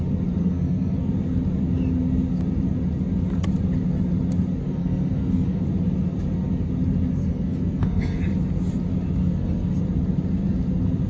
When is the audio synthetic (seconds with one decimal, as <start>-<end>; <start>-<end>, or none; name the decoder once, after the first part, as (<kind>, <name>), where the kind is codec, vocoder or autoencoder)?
0.4-1.1 (codec, SNAC); 4.6-5.6; 7.1-8.2; 9.2-9.8